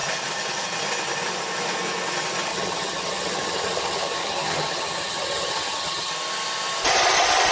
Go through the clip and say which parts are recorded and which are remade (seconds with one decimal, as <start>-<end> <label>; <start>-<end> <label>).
0.0-2.5 recorded; 2.5-6.1 remade; 6.1-7.5 recorded

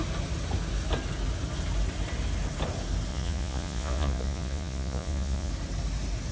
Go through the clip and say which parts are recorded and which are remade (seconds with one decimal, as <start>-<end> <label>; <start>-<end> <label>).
0.0-3.1 recorded; 3.1-5.5 remade; 5.5-6.3 recorded

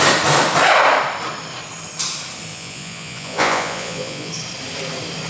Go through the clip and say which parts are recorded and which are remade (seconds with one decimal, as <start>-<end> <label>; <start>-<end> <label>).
0.0-2.5 recorded; 2.5-4.3 remade; 4.3-5.3 recorded

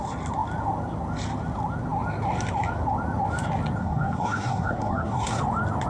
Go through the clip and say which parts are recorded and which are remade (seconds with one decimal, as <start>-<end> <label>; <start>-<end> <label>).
0.0-3.8 recorded; 3.8-5.4 remade; 5.4-5.9 recorded

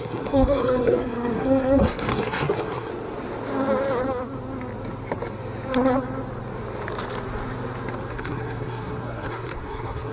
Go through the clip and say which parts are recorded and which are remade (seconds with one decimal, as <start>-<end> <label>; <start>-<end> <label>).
0.0-2.9 remade; 2.9-8.1 recorded; 8.1-10.1 remade

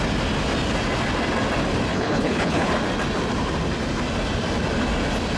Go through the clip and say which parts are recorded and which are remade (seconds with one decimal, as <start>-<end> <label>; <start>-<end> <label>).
0.0-1.9 recorded; 1.9-2.7 remade; 2.7-5.4 recorded

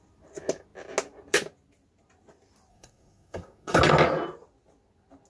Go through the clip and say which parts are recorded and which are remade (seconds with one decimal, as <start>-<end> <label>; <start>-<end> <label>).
0.0-2.7 recorded; 2.7-3.8 remade; 3.8-5.3 recorded

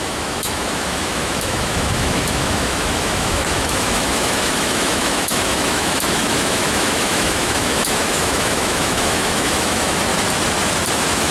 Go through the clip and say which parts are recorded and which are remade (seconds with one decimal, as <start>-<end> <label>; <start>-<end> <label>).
0.0-10.1 remade; 10.1-10.9 recorded; 10.9-11.3 remade